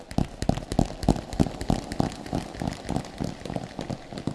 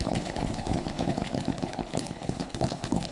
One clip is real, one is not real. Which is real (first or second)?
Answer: first